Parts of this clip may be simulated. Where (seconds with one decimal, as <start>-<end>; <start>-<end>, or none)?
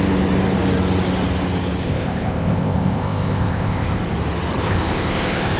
1.8-4.0; 4.6-5.6